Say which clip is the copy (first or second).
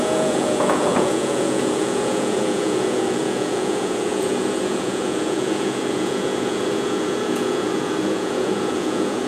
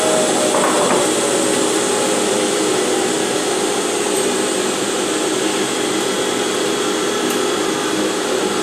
first